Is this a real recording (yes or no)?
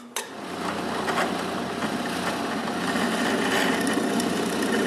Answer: yes